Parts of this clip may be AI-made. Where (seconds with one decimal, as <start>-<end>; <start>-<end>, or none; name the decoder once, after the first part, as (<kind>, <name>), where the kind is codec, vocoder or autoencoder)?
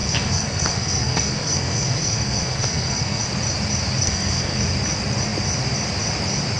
0.0-3.2 (codec, SNAC); 4.0-4.6